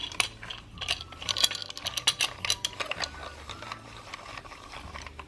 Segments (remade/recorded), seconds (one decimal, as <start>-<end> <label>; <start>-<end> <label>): 0.0-1.0 recorded; 1.0-1.6 remade; 1.6-4.8 recorded; 4.8-5.3 remade